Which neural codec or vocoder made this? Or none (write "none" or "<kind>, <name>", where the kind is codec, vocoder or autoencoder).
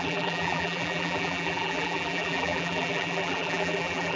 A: vocoder, BigVGAN v2